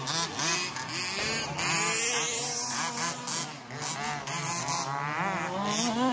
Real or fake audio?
real